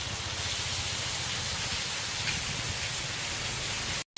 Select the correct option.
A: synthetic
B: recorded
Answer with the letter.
B